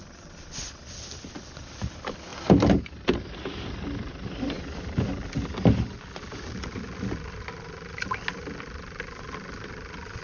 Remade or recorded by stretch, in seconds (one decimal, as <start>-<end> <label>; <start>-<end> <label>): 0.0-10.2 recorded